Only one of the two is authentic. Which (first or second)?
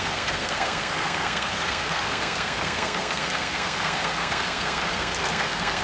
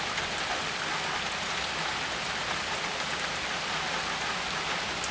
second